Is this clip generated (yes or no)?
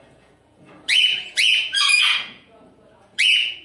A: yes